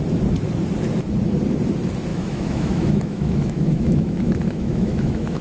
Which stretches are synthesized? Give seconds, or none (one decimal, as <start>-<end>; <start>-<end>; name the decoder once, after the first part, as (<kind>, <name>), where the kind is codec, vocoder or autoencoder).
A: 2.1-5.4 (autoencoder, DAC-VAE)